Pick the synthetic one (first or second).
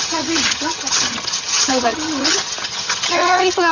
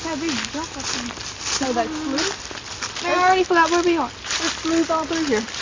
first